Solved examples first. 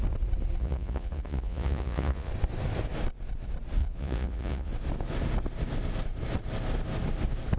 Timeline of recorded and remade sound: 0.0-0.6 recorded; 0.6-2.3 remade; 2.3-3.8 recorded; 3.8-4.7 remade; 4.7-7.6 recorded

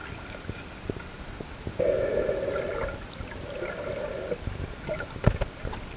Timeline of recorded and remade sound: 0.0-6.0 recorded

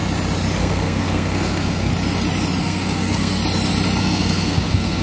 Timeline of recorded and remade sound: 0.0-0.6 recorded; 0.6-1.9 remade; 1.9-2.6 recorded; 2.6-3.4 remade; 3.4-4.0 recorded; 4.0-5.0 remade

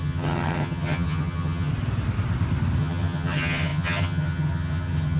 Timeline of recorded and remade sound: 0.0-1.7 remade; 1.7-2.8 recorded; 2.8-5.2 remade

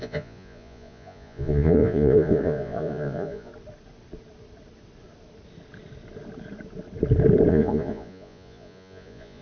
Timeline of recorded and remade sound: 0.0-3.5 remade; 3.5-7.5 recorded; 7.5-9.4 remade

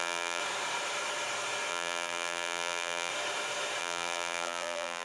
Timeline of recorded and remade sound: 0.0-0.4 remade; 0.4-1.7 recorded; 1.7-3.1 remade; 3.1-3.8 recorded; 3.8-5.0 remade

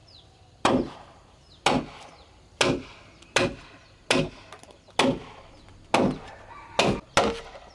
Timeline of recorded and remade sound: 0.0-0.9 remade; 0.9-7.7 recorded

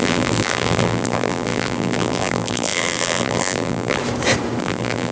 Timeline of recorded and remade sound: 0.0-4.0 remade; 4.0-4.6 recorded; 4.6-5.1 remade